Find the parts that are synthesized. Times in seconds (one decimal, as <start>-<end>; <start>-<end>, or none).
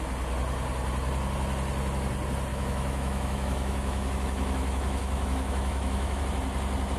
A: 2.5-6.2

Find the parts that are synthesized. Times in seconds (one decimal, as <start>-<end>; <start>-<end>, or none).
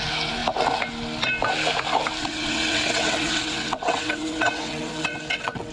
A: 2.2-5.7